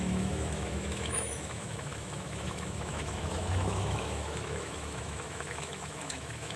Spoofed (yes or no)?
yes